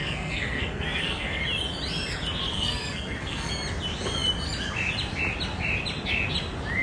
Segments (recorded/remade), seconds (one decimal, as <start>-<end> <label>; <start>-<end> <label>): 0.0-1.4 remade; 1.4-2.5 recorded; 2.5-3.5 remade; 3.5-6.8 recorded